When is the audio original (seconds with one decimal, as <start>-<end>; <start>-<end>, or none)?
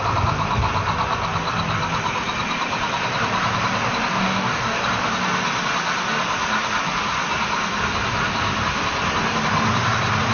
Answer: 0.0-4.1; 4.8-10.3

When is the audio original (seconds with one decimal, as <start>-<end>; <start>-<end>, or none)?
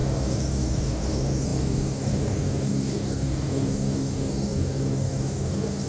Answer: none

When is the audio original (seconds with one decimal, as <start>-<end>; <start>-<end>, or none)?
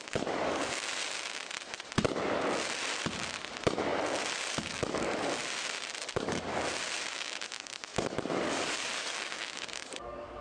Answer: 1.0-4.4; 5.4-6.1; 6.5-7.1